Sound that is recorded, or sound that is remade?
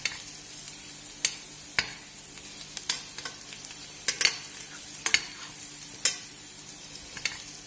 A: recorded